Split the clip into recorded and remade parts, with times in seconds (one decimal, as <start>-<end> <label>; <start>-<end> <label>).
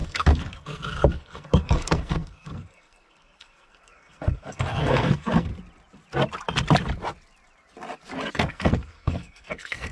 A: 0.0-5.5 remade; 5.5-8.3 recorded; 8.3-9.9 remade